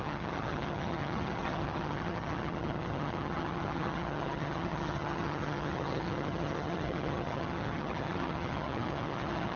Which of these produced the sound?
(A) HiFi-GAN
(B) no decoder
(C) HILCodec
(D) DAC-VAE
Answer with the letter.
A